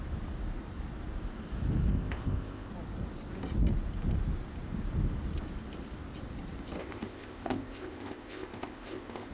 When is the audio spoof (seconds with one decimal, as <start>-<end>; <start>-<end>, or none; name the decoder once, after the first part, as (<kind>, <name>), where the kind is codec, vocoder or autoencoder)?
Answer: 1.9-2.7 (codec, ZipCodec); 6.8-9.3